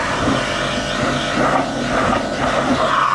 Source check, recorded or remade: recorded